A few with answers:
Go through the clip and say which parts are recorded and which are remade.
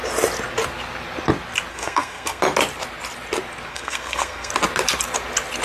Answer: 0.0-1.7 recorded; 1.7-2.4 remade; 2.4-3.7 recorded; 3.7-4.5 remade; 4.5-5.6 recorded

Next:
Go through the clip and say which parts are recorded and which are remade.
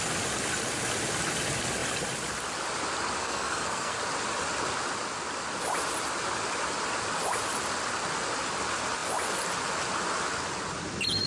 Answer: 0.0-3.2 recorded; 3.2-4.0 remade; 4.0-11.3 recorded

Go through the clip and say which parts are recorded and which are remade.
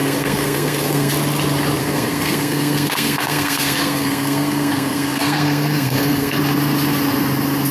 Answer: 0.0-1.1 remade; 1.1-1.8 recorded; 1.8-6.4 remade; 6.4-7.7 recorded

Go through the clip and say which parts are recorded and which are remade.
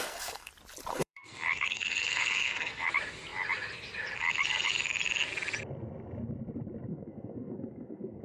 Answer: 0.0-0.5 remade; 0.5-0.9 recorded; 0.9-2.9 remade; 2.9-6.9 recorded; 6.9-8.2 remade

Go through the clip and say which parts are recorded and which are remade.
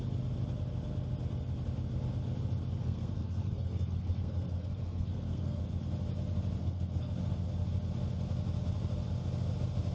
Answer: 0.0-2.8 recorded; 2.8-5.6 remade; 5.6-6.6 recorded; 6.6-7.1 remade; 7.1-9.9 recorded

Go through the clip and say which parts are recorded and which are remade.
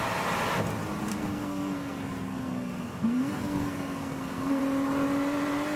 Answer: 0.0-1.1 recorded; 1.1-4.6 remade; 4.6-5.8 recorded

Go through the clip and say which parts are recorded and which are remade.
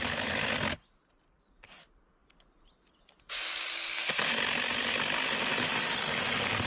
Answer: 0.0-6.7 recorded